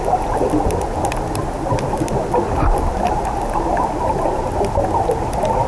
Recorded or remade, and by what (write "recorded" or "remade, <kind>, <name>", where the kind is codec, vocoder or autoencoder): recorded